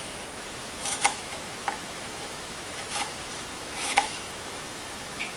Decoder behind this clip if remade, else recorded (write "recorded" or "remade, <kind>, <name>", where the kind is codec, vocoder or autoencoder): remade, autoencoder, DAC-VAE